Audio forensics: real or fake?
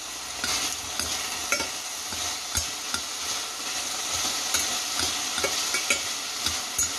real